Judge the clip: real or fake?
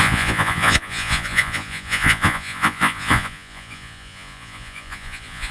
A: fake